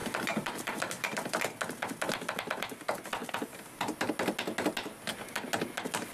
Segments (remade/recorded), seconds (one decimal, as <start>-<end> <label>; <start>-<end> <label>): 0.0-1.4 remade; 1.4-3.2 recorded; 3.2-4.1 remade; 4.1-6.1 recorded